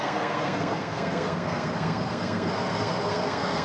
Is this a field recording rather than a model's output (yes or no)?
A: no